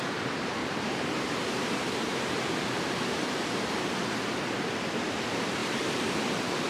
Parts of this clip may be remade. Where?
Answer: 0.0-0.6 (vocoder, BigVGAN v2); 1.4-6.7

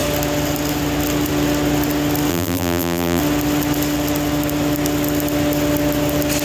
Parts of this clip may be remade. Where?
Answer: 2.3-3.2 (vocoder, BigVGAN v2)

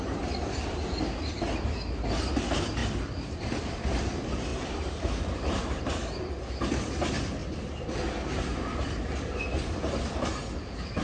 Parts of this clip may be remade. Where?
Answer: 4.5-5.8 (vocoder, BigVGAN v2)

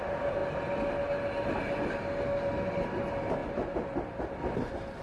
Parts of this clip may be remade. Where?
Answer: 3.4-5.0 (vocoder, BigVGAN v2)